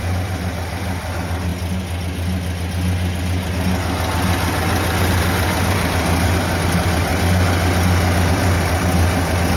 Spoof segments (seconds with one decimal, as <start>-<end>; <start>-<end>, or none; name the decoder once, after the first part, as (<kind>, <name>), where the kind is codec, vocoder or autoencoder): 0.0-1.5 (vocoder, BigVGAN v2); 5.2-7.1; 8.3-9.6